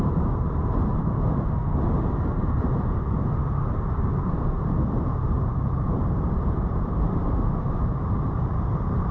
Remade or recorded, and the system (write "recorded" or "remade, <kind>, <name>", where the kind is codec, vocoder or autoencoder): remade, vocoder, BigVGAN v2